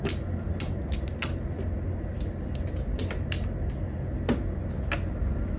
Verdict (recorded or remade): recorded